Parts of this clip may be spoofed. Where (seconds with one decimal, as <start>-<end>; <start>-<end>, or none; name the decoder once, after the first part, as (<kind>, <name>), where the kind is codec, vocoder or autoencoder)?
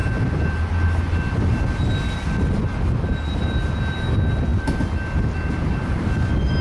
none